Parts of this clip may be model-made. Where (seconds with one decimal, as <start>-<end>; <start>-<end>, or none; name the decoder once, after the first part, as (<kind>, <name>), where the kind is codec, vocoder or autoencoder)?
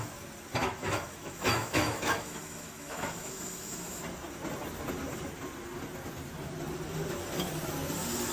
0.6-4.0 (autoencoder, DAC-VAE)